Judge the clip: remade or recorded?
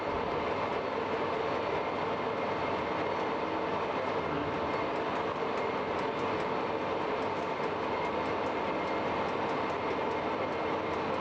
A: recorded